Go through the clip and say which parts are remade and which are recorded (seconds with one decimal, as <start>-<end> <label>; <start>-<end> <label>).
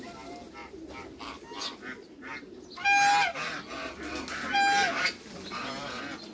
0.0-6.3 recorded